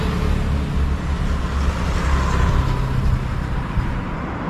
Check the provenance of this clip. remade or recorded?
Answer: recorded